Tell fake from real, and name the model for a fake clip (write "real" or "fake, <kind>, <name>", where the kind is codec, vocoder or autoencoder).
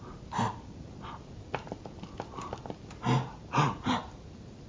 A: real